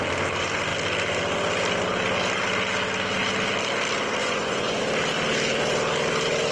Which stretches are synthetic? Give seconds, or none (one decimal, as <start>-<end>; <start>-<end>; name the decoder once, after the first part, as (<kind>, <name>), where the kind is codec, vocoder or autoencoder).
4.2-4.8 (vocoder, Vocos)